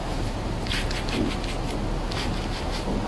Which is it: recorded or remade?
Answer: recorded